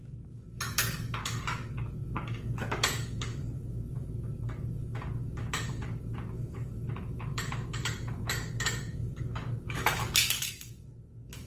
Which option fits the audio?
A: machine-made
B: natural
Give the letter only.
A